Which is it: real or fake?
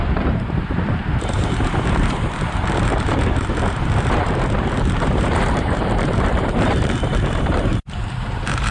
fake